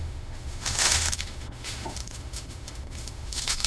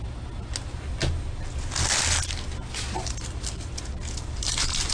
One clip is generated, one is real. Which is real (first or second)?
second